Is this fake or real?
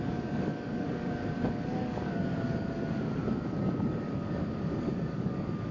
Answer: fake